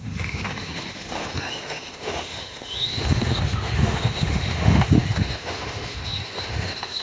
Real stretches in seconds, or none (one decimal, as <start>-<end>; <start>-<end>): none